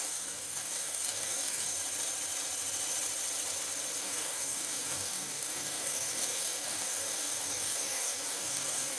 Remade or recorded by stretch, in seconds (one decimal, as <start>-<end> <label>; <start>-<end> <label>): 0.0-1.8 remade; 1.8-4.0 recorded; 4.0-9.0 remade